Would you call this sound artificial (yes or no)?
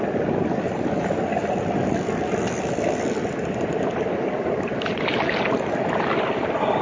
no